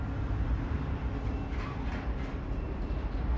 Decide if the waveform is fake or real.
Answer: real